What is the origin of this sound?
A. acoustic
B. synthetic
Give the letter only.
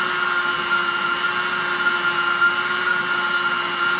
A